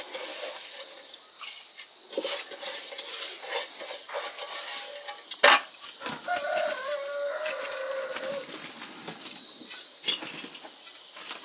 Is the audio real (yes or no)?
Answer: yes